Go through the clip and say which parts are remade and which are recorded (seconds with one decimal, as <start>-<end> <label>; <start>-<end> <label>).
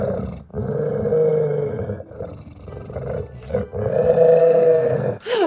0.0-4.4 recorded; 4.4-5.5 remade